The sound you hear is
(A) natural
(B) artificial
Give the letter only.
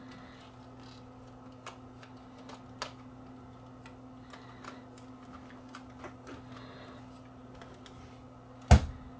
A